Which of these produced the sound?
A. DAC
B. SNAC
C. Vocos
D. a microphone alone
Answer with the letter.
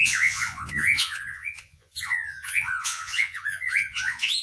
C